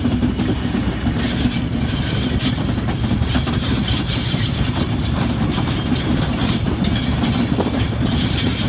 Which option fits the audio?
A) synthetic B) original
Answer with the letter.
A